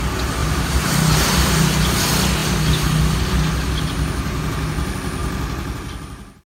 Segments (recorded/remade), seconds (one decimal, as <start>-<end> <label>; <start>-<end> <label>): 0.0-0.4 recorded; 0.4-1.7 remade; 1.7-6.5 recorded